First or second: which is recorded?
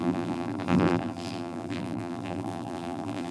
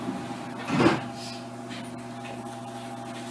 second